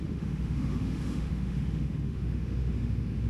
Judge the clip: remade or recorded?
remade